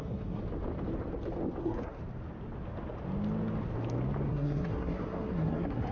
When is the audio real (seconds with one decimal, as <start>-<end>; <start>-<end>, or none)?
0.4-1.6; 2.0-4.3

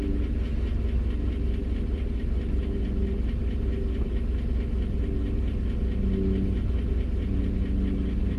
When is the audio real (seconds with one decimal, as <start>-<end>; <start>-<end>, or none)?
0.0-1.6; 2.2-8.4

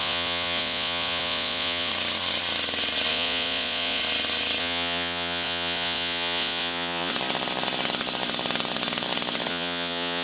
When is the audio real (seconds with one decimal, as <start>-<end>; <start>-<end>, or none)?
1.9-3.1; 4.0-4.6; 7.1-9.5